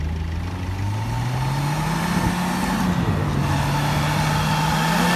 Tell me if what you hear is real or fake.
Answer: real